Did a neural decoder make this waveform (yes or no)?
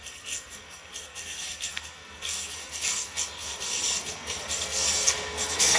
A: yes